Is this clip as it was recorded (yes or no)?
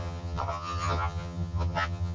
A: no